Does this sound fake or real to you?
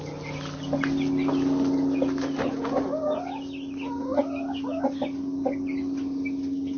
real